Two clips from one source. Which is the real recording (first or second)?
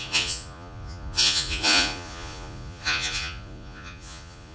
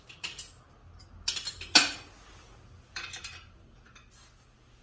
second